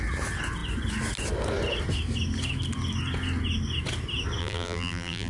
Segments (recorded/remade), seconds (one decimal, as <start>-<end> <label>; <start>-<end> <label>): 0.0-4.4 recorded; 4.4-5.3 remade